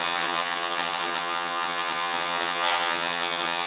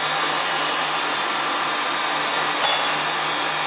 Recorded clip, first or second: second